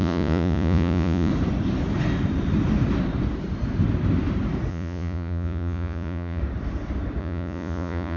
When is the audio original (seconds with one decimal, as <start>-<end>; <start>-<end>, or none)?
1.3-4.7; 6.4-7.2